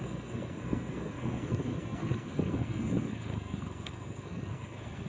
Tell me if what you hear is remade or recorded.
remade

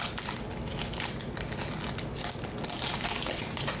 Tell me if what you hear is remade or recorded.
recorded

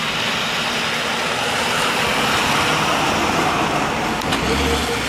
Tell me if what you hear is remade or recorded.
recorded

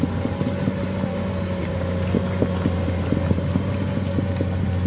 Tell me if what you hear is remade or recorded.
recorded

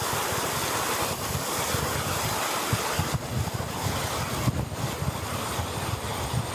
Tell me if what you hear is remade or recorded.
recorded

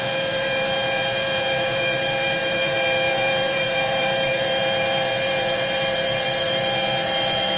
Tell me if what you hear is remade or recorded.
remade